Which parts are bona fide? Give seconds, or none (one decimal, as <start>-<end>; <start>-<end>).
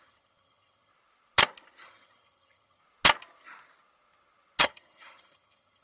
0.9-1.8; 2.8-4.6